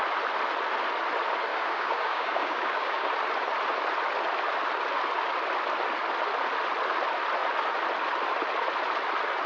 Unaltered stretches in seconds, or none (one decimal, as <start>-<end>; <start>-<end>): 0.0-1.5; 3.1-9.5